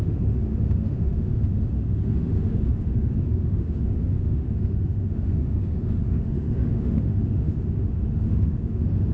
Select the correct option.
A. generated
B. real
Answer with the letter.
A